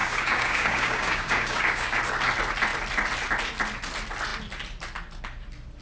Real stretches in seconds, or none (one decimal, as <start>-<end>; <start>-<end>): 2.0-5.8